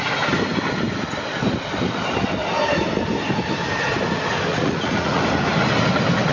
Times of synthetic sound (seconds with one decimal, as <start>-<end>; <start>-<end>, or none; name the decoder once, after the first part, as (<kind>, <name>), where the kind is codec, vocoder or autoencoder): 4.5-5.2 (vocoder, Vocos)